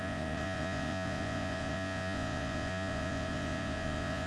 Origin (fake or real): fake